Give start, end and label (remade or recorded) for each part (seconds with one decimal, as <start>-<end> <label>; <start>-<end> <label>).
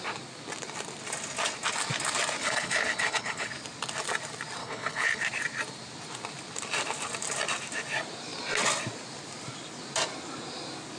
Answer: 0.0-2.4 recorded; 2.4-3.5 remade; 3.5-4.6 recorded; 4.6-5.2 remade; 5.2-11.0 recorded